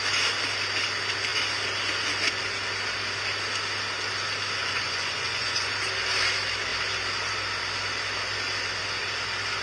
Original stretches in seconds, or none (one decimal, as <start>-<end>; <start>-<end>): 0.0-4.6; 5.7-9.6